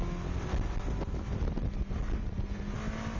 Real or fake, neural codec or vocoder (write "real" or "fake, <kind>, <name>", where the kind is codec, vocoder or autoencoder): real